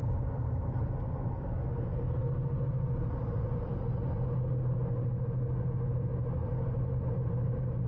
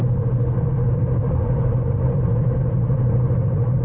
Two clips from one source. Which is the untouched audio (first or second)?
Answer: first